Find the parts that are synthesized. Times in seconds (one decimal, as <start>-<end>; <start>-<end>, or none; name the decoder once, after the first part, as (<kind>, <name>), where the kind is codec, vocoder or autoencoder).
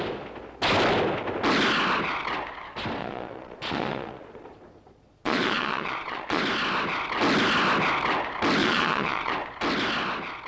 3.0-6.4 (vocoder, Vocos); 8.6-9.3